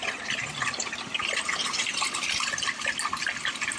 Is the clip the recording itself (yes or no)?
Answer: yes